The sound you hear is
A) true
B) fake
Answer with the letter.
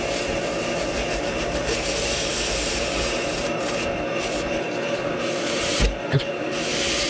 B